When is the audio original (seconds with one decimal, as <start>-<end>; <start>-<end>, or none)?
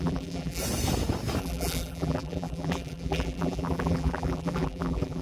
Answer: 0.6-1.4